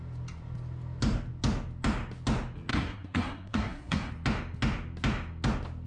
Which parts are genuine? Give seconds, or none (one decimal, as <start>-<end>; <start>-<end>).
0.0-2.7; 4.1-5.9